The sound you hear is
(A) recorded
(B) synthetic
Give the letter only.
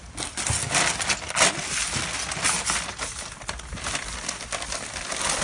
A